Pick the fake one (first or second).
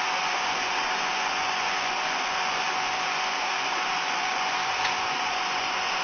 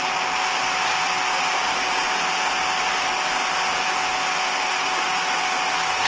first